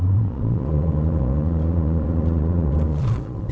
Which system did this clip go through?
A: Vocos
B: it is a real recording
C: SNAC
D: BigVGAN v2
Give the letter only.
A